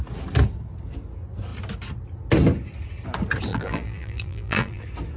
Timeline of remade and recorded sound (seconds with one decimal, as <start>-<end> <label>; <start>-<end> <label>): 0.0-3.5 recorded; 3.5-4.8 remade; 4.8-5.2 recorded